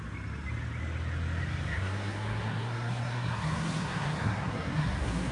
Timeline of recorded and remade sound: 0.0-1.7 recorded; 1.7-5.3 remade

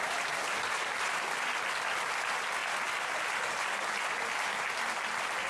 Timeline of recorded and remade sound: 0.0-5.5 recorded